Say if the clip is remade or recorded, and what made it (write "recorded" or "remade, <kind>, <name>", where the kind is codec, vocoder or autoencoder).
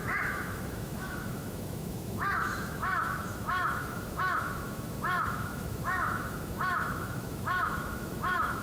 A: remade, autoencoder, DAC-VAE